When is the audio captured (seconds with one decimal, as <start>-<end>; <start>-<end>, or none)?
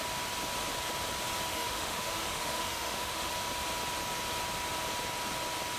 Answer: 0.0-1.5; 3.3-5.8